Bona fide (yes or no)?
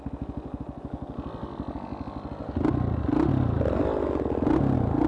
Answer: yes